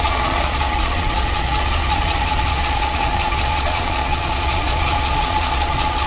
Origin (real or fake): fake